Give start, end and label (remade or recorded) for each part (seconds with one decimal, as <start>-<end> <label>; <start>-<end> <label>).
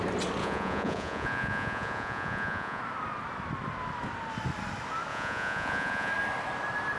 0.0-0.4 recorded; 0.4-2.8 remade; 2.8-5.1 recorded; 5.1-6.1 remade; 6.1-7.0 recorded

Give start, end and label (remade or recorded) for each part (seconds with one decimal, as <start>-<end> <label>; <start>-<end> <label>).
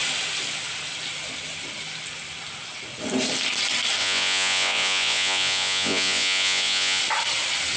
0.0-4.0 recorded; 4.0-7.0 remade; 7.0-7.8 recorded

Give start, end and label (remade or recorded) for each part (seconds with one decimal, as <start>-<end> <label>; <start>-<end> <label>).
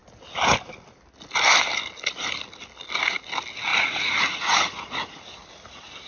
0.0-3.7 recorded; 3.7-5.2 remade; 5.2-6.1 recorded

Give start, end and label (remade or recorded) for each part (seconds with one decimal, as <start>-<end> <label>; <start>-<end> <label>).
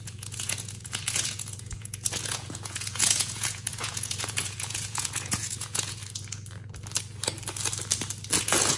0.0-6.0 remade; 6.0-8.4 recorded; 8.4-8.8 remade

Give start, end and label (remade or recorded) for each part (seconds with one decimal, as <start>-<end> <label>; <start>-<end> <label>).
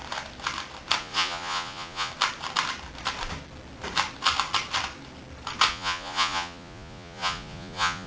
0.0-1.0 recorded; 1.0-2.1 remade; 2.1-5.7 recorded; 5.7-8.1 remade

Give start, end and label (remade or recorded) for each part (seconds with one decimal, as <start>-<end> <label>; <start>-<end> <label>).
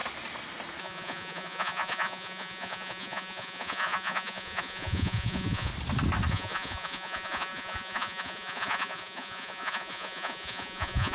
0.0-0.8 recorded; 0.8-5.7 remade; 5.7-6.3 recorded; 6.3-11.1 remade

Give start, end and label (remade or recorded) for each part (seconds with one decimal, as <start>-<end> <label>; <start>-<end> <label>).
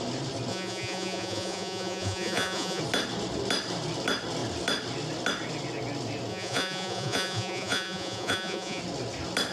0.0-0.5 recorded; 0.5-2.8 remade; 2.8-6.3 recorded; 6.3-8.8 remade; 8.8-9.5 recorded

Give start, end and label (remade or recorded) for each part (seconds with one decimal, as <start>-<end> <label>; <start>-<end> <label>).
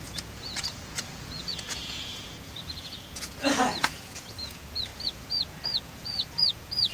0.0-6.9 remade